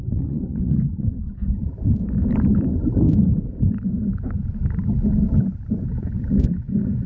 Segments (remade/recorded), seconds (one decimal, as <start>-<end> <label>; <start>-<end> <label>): 0.0-1.6 remade; 1.6-5.9 recorded; 5.9-7.1 remade